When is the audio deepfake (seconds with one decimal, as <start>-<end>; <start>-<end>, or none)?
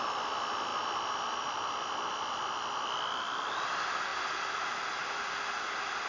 none